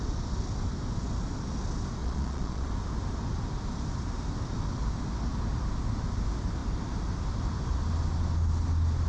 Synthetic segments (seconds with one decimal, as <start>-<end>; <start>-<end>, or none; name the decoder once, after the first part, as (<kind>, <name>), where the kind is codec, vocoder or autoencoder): 2.0-2.7 (vocoder, Vocos)